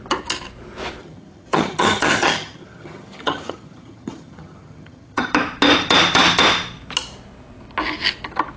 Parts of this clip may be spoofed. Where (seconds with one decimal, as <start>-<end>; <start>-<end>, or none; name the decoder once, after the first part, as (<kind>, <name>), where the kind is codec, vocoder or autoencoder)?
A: 1.0-5.3 (vocoder, HiFi-GAN)